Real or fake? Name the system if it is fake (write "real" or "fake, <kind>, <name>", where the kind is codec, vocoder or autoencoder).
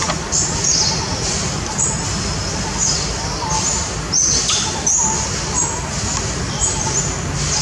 real